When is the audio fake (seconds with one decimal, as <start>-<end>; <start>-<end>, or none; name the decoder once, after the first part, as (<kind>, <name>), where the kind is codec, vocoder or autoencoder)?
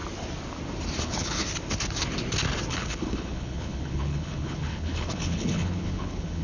1.0-1.4 (codec, HILCodec); 2.7-6.4